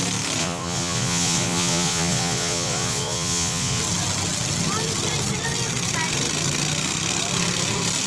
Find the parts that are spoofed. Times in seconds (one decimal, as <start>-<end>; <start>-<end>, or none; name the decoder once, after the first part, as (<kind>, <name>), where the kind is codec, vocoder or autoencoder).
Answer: 0.4-3.8 (vocoder, Vocos)